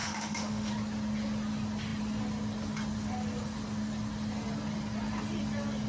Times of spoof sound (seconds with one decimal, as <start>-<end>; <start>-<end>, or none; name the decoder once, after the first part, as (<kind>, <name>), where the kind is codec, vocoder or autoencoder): 0.0-0.7 (autoencoder, DAC-VAE)